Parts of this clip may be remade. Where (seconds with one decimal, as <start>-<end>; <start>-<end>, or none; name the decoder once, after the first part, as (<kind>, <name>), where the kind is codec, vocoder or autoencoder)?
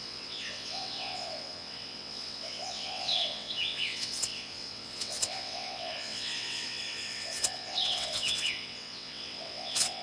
0.0-10.0 (vocoder, WaveNeXt)